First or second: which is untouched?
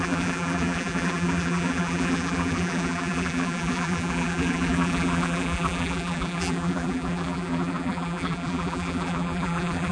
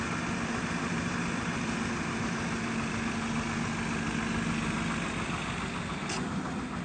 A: second